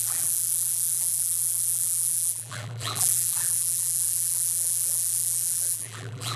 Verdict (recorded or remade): remade